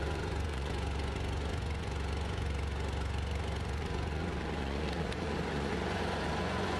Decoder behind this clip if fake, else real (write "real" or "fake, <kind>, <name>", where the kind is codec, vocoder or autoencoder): fake, vocoder, Vocos